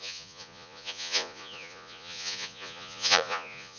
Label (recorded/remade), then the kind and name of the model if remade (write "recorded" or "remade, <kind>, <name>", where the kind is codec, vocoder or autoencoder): remade, vocoder, Vocos